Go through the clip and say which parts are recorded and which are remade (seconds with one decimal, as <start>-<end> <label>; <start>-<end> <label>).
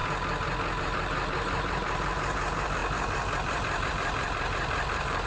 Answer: 0.0-0.8 recorded; 0.8-5.3 remade